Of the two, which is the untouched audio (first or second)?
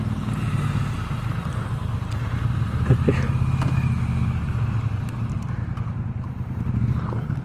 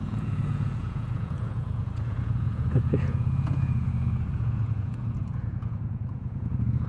first